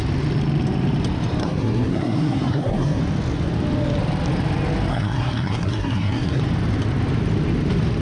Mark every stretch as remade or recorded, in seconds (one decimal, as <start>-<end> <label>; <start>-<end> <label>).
0.0-1.4 recorded; 1.4-3.0 remade; 3.0-4.9 recorded; 4.9-6.4 remade; 6.4-8.0 recorded